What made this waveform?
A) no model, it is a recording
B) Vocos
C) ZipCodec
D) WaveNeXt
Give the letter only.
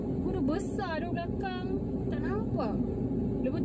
A